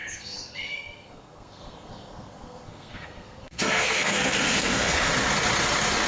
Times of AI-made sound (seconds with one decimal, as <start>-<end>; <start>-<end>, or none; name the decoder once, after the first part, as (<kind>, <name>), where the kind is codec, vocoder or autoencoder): 0.0-5.1 (codec, SNAC)